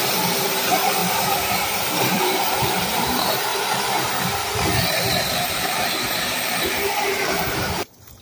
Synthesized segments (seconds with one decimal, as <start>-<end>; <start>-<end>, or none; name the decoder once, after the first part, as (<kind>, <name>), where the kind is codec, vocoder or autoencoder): 0.0-3.5 (vocoder, BigVGAN v2); 5.4-8.2